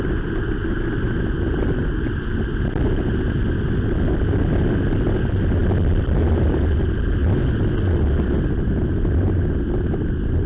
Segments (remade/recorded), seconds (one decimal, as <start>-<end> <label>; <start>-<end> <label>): 0.0-5.6 recorded; 5.6-6.8 remade; 6.8-10.5 recorded